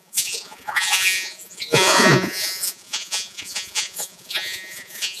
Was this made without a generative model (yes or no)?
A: no